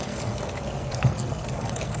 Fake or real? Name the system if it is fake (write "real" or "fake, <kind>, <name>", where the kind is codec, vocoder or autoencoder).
fake, codec, SNAC